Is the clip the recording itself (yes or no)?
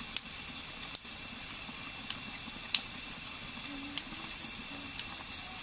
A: yes